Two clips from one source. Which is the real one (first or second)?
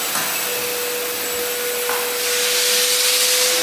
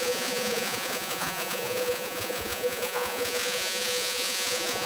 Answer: first